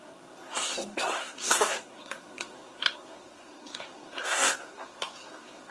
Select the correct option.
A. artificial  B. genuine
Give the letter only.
A